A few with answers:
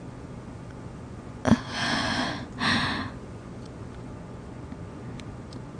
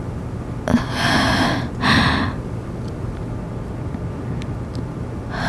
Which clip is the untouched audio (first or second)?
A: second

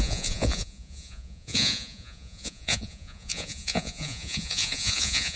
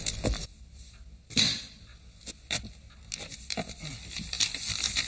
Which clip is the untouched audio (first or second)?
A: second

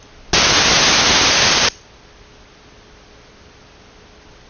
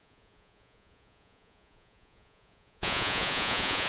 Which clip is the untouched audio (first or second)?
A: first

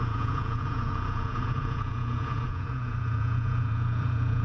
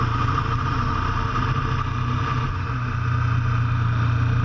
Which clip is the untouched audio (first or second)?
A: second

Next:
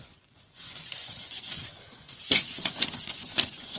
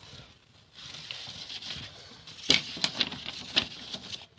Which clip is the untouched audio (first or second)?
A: second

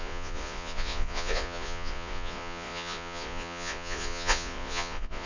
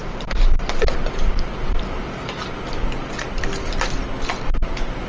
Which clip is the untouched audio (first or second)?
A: second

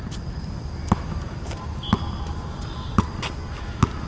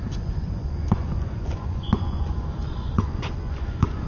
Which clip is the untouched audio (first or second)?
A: first